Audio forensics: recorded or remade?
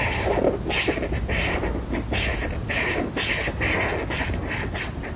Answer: recorded